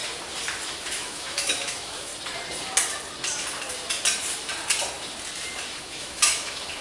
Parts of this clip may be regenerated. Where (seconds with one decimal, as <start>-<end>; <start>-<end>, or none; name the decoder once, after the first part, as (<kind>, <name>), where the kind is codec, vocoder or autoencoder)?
0.9-2.1 (autoencoder, DAC-VAE); 5.8-6.8